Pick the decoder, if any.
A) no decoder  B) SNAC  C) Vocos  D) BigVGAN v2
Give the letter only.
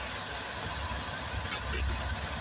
A